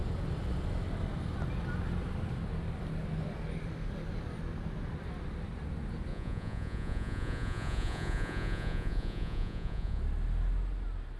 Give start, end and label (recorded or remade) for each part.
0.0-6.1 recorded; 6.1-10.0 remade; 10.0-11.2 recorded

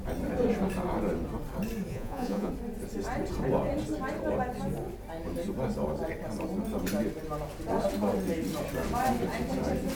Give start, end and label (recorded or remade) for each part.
0.0-1.9 recorded; 1.9-2.5 remade; 2.5-10.0 recorded

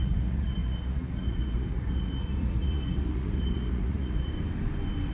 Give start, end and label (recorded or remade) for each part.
0.0-4.3 remade; 4.3-5.1 recorded

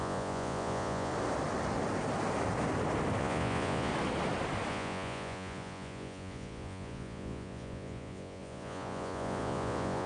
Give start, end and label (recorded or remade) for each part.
0.0-1.1 remade; 1.1-3.2 recorded; 3.2-3.9 remade; 3.9-4.7 recorded; 4.7-10.1 remade